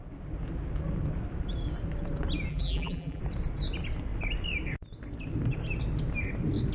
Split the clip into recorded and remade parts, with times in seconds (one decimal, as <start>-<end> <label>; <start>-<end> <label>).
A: 0.0-2.5 recorded; 2.5-3.2 remade; 3.2-6.7 recorded